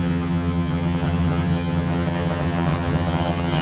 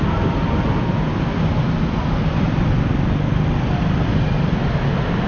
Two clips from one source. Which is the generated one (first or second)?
first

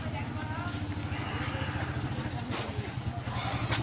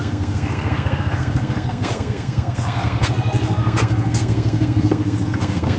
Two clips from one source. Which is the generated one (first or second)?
second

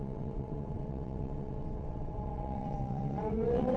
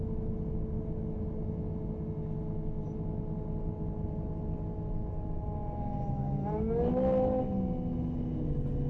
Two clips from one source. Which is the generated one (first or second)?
first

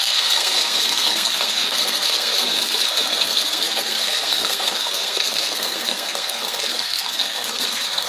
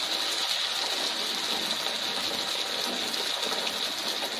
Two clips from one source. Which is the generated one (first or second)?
first